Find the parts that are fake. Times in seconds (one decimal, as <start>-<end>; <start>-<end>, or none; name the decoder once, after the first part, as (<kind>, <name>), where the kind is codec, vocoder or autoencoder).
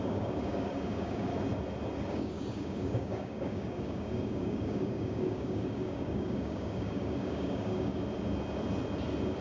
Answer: 0.0-1.3 (codec, DAC); 2.1-7.9